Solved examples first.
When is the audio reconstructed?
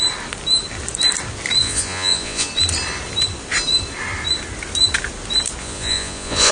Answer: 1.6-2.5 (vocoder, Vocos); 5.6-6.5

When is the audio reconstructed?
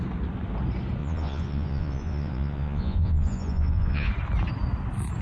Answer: 1.0-4.1 (vocoder, Vocos)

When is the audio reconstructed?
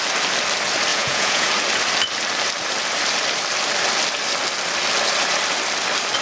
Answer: 0.9-1.5 (vocoder, Vocos)